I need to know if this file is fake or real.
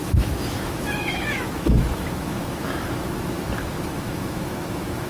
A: fake